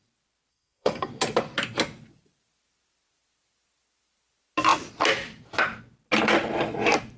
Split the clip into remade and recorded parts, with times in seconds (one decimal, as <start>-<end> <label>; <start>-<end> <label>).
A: 0.0-0.5 recorded; 0.5-1.1 remade; 1.1-7.2 recorded